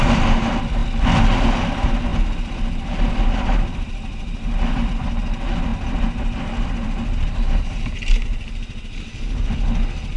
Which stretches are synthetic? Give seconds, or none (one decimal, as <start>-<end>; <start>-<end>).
none